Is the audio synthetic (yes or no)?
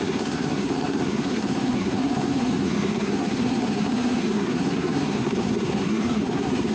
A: yes